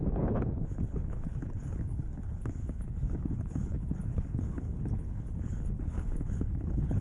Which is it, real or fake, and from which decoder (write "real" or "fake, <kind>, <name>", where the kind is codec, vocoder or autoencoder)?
fake, codec, HILCodec